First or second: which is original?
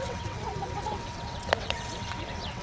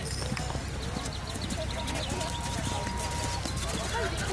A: second